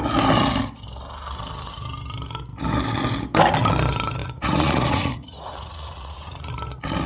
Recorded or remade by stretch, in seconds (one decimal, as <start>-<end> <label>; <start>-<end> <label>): 0.0-4.2 recorded; 4.2-6.5 remade; 6.5-7.1 recorded